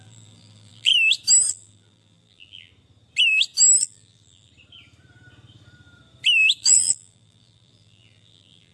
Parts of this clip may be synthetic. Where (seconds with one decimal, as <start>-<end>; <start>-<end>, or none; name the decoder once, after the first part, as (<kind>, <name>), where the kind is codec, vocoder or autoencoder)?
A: 0.0-0.9 (vocoder, BigVGAN v2); 1.5-2.7; 3.8-4.5; 6.6-8.7